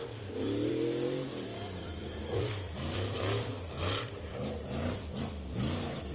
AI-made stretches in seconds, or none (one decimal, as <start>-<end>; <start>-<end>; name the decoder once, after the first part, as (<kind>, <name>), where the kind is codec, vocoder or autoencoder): 0.0-6.1 (vocoder, BigVGAN v2)